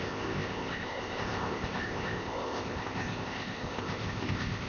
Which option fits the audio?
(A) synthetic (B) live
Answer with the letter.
A